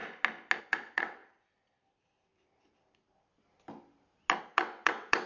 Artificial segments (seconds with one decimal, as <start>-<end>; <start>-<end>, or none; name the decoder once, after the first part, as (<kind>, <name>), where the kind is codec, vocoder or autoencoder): 0.6-1.2 (vocoder, WaveNeXt); 4.4-5.3